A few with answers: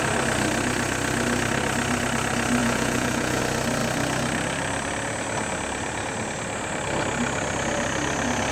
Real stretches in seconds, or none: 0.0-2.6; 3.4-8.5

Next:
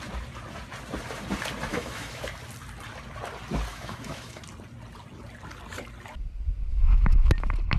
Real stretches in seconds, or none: 0.0-1.7; 2.2-3.7; 4.4-6.7; 7.3-7.8

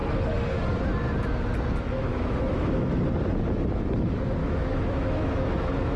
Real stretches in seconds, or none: 0.0-2.1; 3.0-4.4

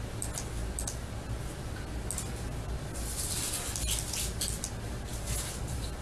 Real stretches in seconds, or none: 0.0-6.0